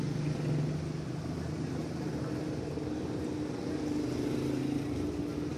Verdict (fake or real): real